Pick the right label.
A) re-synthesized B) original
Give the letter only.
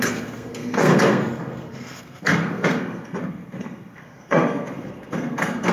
A